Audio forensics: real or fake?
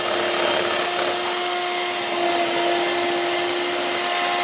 real